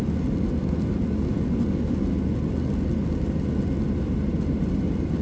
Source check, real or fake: real